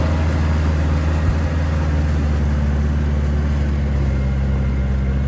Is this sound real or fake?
real